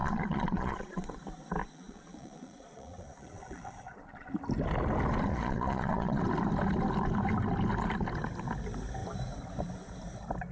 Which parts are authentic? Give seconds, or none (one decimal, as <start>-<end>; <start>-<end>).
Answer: 1.2-1.6; 4.3-5.3; 6.2-10.5